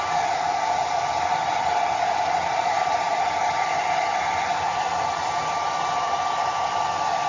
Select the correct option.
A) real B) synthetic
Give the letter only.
B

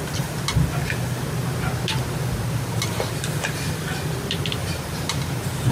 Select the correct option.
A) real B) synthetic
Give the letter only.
A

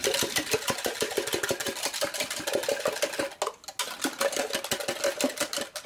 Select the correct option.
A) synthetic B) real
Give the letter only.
B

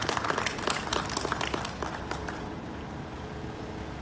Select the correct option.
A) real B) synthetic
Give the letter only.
A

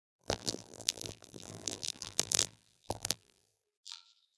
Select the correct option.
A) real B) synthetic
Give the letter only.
B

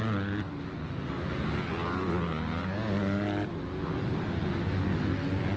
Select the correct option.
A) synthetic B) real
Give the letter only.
B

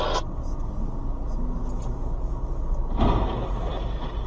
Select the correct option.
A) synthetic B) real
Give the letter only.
B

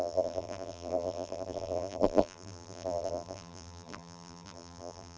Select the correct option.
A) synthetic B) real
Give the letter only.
A